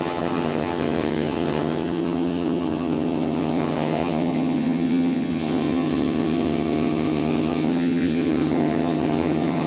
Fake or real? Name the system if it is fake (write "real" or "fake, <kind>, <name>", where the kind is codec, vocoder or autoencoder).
fake, vocoder, HiFi-GAN